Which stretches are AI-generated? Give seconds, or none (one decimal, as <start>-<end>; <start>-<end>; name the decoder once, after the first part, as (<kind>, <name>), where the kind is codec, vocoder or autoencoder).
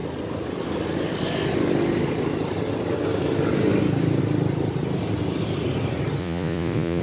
6.2-7.0 (vocoder, Vocos)